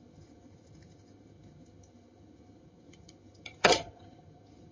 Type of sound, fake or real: fake